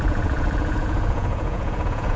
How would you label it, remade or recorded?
remade